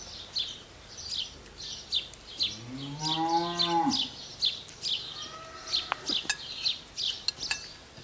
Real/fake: real